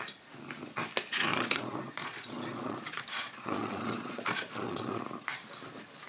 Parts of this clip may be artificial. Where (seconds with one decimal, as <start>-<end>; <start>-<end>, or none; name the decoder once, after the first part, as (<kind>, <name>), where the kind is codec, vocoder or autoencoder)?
1.3-5.0 (vocoder, Vocos)